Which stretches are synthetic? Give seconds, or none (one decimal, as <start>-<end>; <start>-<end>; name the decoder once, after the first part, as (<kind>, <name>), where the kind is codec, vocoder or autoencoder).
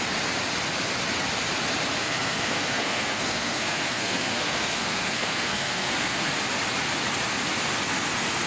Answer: 2.0-6.3 (codec, SNAC)